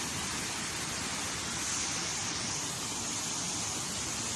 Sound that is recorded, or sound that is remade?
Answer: recorded